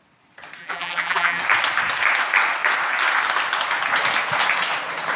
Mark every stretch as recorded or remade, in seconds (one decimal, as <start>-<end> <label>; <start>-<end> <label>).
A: 0.0-0.6 recorded; 0.6-1.4 remade; 1.4-5.2 recorded